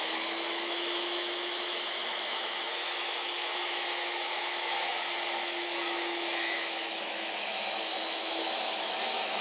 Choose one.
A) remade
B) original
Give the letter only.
A